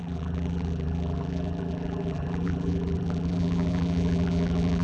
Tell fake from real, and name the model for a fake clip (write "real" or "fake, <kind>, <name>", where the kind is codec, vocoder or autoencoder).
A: fake, vocoder, BigVGAN v2